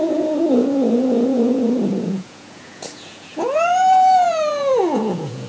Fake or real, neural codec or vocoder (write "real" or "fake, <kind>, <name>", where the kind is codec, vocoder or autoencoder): fake, vocoder, Vocos